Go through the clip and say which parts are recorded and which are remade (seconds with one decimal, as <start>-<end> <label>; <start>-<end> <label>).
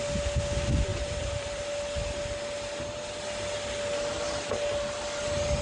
0.0-0.9 recorded; 0.9-1.6 remade; 1.6-5.6 recorded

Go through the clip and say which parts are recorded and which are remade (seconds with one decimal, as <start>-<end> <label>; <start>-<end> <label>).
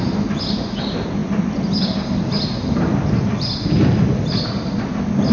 0.0-5.3 recorded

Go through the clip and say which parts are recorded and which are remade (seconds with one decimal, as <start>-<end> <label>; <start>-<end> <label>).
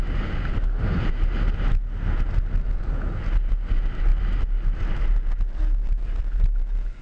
0.0-7.0 recorded